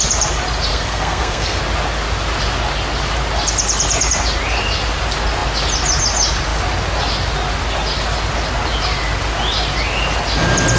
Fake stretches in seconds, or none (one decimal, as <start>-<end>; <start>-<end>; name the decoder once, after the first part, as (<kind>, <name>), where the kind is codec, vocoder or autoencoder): 0.7-1.6 (codec, SNAC)